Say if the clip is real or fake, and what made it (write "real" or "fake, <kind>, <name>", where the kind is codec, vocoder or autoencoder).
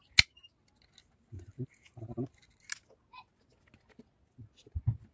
real